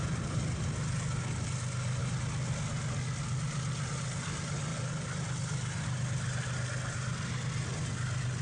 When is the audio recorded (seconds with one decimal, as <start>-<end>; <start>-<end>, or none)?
0.0-8.4